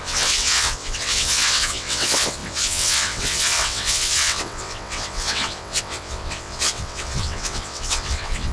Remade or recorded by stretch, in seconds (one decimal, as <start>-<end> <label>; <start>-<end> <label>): 0.0-8.5 remade